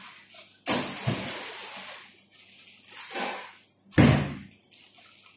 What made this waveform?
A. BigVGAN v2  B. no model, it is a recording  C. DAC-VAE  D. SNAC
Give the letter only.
B